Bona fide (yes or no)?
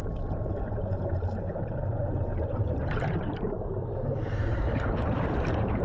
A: no